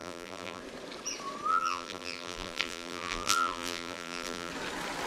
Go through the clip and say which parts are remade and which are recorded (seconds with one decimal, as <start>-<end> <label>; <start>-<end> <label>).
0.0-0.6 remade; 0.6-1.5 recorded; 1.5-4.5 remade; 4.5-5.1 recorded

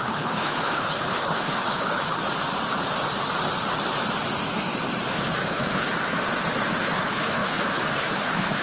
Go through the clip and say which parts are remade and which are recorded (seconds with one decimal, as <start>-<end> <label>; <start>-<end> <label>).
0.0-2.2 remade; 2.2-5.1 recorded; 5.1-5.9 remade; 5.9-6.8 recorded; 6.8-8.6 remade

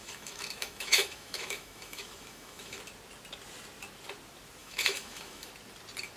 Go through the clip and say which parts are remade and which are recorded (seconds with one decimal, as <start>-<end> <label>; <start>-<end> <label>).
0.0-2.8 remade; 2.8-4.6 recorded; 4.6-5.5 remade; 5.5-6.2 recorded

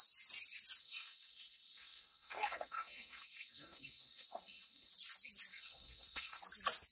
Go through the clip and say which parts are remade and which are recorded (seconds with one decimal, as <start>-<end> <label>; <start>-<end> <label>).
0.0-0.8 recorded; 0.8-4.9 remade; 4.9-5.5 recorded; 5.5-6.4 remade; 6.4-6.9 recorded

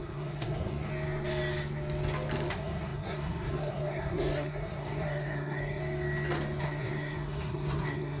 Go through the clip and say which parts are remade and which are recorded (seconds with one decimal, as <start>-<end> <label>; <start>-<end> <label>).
0.0-0.9 remade; 0.9-2.5 recorded; 2.5-5.8 remade; 5.8-6.6 recorded; 6.6-8.2 remade